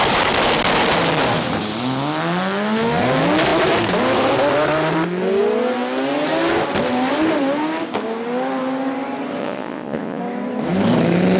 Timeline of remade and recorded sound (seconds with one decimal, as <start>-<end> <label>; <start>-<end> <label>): 0.0-9.4 recorded; 9.4-10.2 remade; 10.2-11.4 recorded